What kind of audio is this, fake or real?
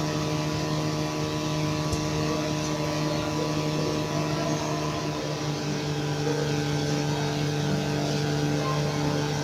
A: real